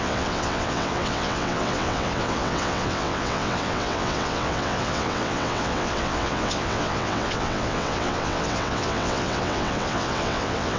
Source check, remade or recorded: remade